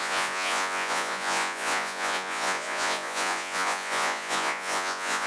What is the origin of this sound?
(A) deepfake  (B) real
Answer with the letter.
A